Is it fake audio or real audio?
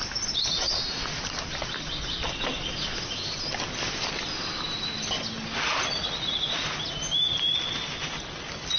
real